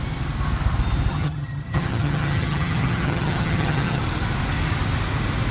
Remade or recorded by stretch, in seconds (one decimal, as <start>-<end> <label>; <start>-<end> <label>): 0.0-1.1 recorded; 1.1-4.0 remade; 4.0-5.5 recorded